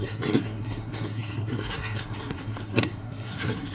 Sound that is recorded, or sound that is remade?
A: remade